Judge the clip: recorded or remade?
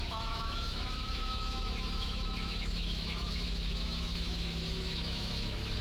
remade